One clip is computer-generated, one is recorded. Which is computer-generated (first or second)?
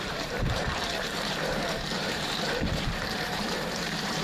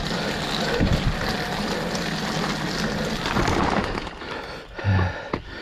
first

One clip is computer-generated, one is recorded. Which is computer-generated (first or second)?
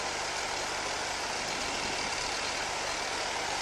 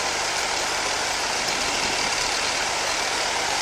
second